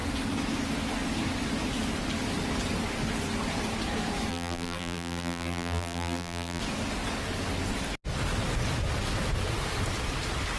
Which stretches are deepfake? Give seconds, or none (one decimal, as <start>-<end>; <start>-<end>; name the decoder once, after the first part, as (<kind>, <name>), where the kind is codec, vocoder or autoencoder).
4.3-6.6 (vocoder, BigVGAN v2)